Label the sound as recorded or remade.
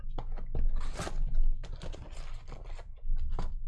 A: recorded